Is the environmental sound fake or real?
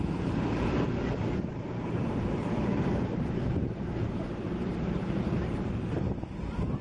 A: fake